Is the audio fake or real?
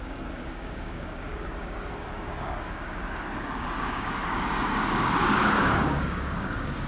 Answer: fake